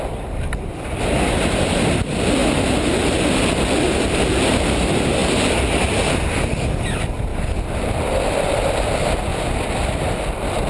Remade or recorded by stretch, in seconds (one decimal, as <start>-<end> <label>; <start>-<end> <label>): 0.0-2.4 recorded; 2.4-3.0 remade; 3.0-7.3 recorded; 7.3-8.9 remade; 8.9-9.3 recorded; 9.3-10.0 remade; 10.0-10.7 recorded